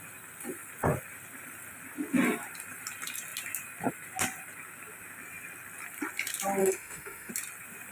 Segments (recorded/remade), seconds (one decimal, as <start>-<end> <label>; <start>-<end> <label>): 0.0-6.6 recorded; 6.6-7.3 remade; 7.3-7.9 recorded